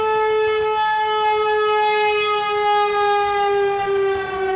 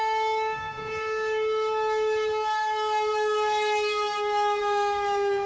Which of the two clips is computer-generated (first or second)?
second